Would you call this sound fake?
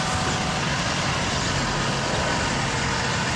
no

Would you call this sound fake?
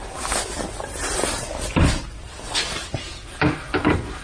no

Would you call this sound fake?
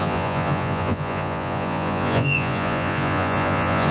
yes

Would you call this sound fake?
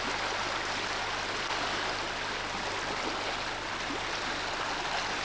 no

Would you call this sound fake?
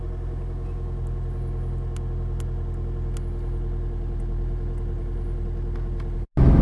no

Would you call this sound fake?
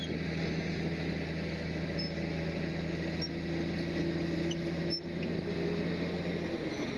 no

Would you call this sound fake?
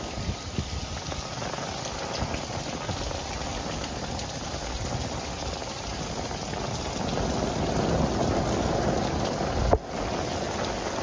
no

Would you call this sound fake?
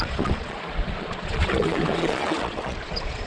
yes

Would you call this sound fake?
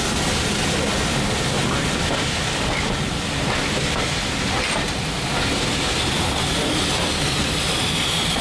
no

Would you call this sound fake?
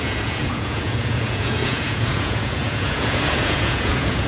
yes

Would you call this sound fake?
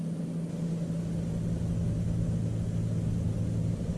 no